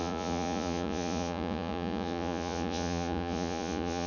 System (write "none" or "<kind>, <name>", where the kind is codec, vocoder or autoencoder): vocoder, Vocos